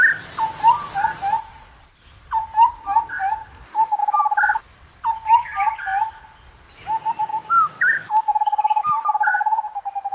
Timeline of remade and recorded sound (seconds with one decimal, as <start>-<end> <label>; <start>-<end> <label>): 0.0-3.4 recorded; 3.4-4.0 remade; 4.0-7.3 recorded; 7.3-8.8 remade; 8.8-9.3 recorded; 9.3-10.1 remade